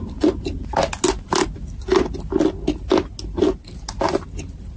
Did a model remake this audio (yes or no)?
no